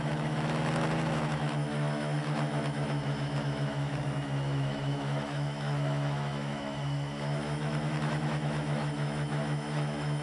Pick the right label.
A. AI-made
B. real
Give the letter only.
A